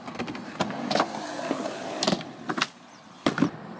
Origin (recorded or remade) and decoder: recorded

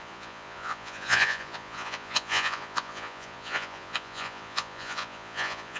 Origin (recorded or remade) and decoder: remade, vocoder, Vocos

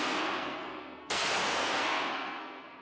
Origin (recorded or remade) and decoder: remade, codec, SNAC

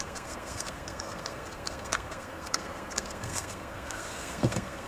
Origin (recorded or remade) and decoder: remade, codec, SNAC